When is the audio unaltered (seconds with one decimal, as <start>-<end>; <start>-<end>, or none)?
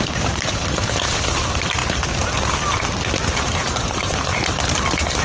1.8-3.4; 4.3-5.2